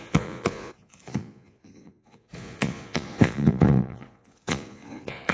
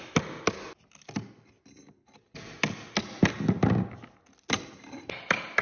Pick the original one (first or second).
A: second